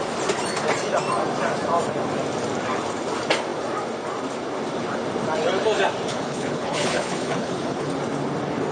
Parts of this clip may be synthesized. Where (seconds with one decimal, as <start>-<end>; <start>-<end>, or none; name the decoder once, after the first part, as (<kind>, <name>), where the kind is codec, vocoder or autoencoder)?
6.1-7.9 (codec, HILCodec)